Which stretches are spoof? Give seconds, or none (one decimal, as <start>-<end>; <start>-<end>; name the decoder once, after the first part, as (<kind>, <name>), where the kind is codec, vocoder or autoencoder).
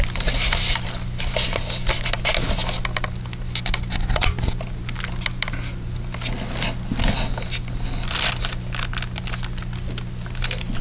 none